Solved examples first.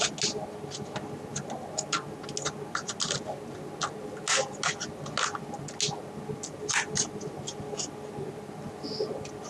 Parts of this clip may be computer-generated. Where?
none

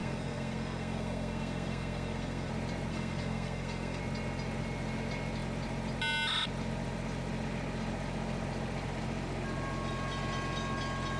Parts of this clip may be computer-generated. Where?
0.0-2.5 (codec, SNAC); 2.9-4.0

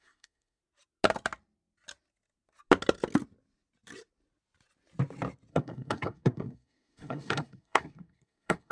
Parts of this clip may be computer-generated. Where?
0.0-0.6 (codec, SNAC); 5.5-8.7

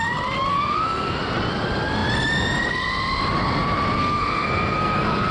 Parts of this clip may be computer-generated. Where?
0.5-1.2 (codec, SNAC); 4.0-5.3